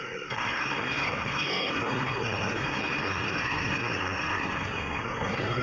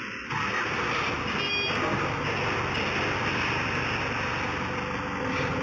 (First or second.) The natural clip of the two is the second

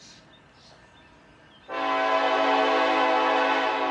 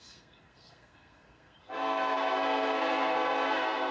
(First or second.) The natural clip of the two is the first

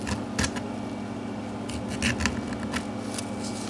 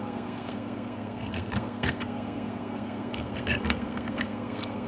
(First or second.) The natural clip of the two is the first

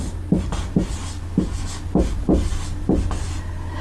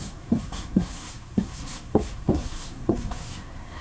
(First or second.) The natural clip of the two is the first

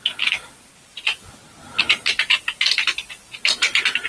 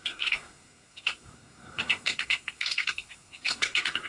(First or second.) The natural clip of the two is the first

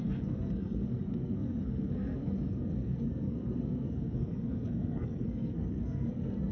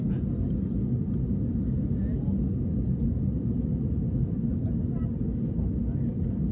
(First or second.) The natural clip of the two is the second